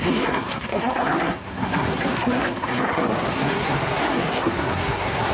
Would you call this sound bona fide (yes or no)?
no